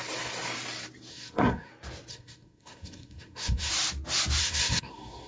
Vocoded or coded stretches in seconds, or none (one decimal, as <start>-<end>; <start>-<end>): 1.1-1.7; 2.1-3.7; 4.4-5.3